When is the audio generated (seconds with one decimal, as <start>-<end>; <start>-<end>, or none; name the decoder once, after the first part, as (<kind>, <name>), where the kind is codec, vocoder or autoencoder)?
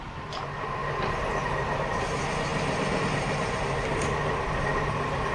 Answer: none